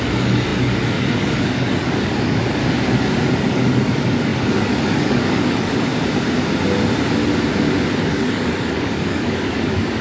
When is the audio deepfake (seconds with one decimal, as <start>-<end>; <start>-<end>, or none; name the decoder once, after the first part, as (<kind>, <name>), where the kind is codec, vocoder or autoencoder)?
0.0-2.6 (codec, DAC); 3.5-5.9; 7.9-10.0